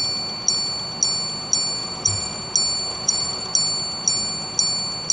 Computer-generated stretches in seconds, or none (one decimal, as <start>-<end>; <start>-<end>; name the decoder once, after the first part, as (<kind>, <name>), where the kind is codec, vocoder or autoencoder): 1.8-2.4 (vocoder, Vocos); 2.9-3.5